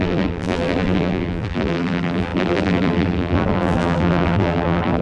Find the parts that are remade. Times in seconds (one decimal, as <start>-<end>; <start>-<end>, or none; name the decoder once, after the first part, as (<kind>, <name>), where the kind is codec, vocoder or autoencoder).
0.0-5.0 (vocoder, BigVGAN v2)